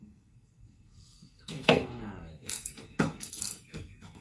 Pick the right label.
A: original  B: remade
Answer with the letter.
B